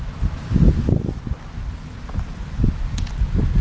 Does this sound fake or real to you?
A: real